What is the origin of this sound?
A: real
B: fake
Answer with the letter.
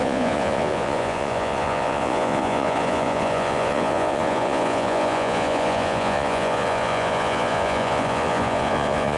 B